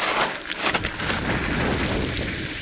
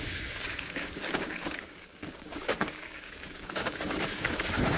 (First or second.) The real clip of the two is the first